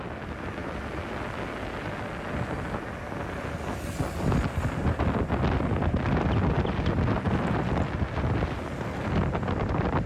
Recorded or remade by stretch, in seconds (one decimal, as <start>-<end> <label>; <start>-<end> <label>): 0.0-10.1 recorded